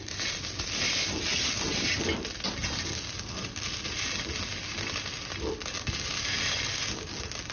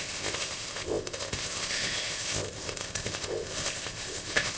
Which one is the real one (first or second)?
first